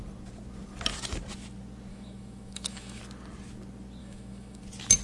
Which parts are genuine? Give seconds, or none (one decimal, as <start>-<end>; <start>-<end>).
0.0-1.9; 3.0-4.0; 4.6-5.0